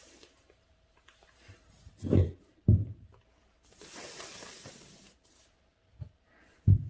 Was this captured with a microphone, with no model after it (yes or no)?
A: no